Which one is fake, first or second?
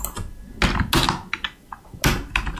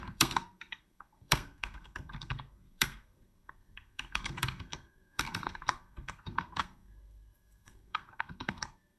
second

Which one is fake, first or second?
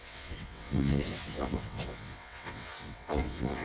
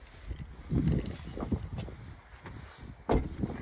first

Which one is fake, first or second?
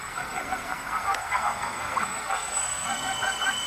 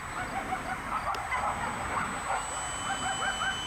first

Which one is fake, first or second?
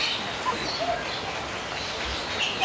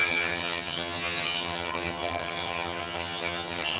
second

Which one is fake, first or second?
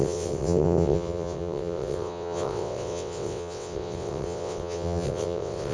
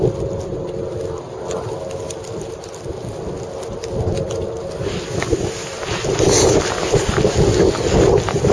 first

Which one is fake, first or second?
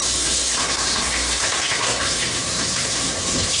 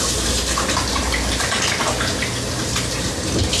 first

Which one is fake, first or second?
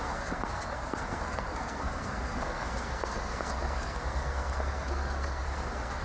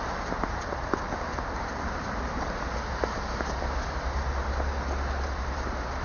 first